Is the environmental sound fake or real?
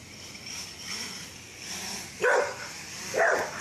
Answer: real